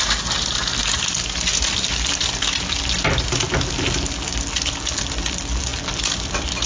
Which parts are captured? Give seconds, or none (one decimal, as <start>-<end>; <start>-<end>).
0.0-6.7